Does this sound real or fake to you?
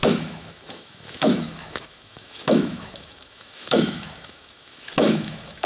fake